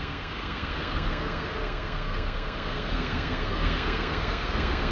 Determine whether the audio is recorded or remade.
remade